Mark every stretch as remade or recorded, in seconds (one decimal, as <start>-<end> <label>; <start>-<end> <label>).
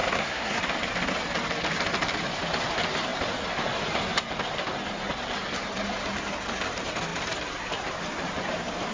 0.0-0.6 remade; 0.6-8.9 recorded